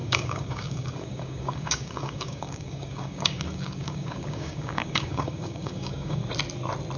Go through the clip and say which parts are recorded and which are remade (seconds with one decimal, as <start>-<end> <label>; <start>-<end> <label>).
0.0-6.2 remade; 6.2-7.0 recorded